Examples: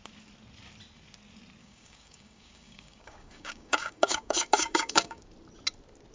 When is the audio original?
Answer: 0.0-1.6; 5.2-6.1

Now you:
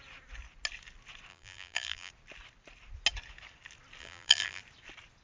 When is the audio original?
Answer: 0.0-1.3; 2.1-4.0; 4.6-5.2

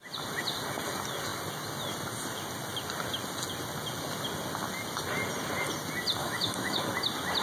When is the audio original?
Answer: 0.0-6.2; 6.8-7.4

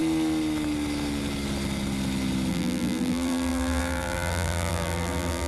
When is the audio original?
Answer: 0.0-2.5

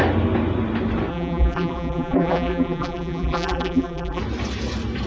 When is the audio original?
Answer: 0.0-1.1; 4.2-5.1